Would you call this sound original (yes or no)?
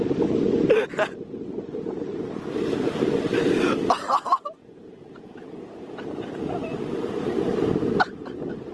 yes